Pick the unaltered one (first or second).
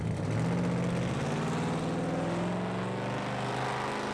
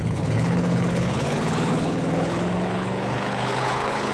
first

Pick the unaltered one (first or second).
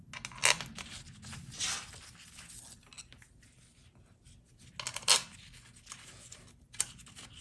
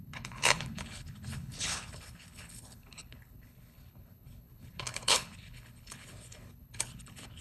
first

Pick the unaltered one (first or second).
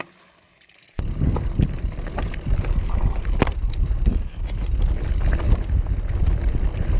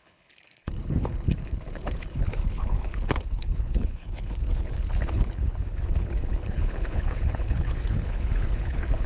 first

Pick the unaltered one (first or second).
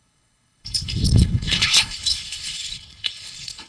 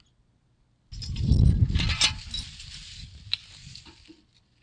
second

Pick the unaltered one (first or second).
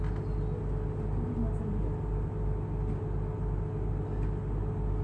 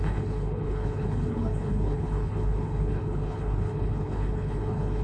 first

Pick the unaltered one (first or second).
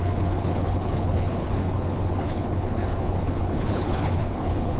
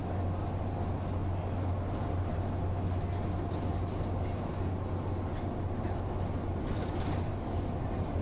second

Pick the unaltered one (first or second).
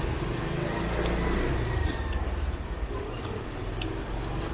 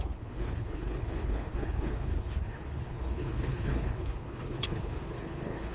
first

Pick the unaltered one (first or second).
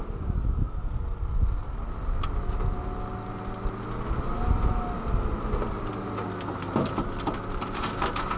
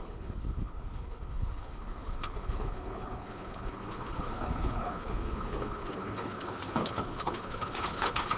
first